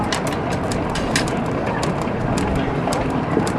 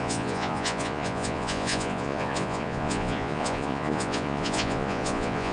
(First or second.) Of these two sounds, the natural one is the first